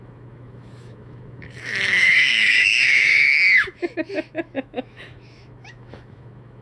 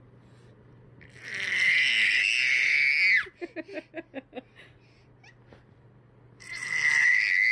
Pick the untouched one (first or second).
second